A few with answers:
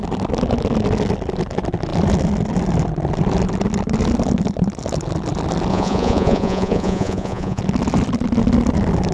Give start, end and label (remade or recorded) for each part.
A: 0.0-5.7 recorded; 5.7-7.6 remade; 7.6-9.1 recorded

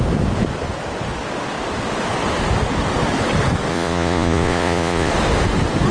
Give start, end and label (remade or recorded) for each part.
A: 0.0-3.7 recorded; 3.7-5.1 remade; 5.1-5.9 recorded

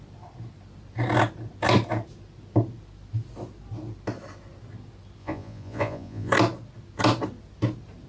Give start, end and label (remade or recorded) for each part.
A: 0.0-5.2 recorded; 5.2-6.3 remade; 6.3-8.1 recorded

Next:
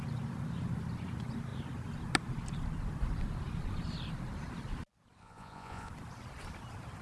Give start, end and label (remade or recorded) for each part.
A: 0.0-5.2 recorded; 5.2-5.9 remade; 5.9-7.0 recorded